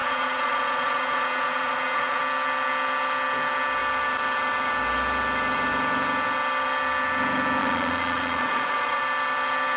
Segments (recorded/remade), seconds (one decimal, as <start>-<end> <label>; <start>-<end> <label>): 0.0-2.2 remade; 2.2-7.6 recorded; 7.6-9.0 remade; 9.0-9.8 recorded